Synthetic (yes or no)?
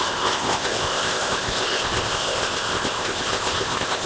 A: yes